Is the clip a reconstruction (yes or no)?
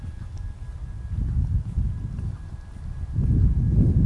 no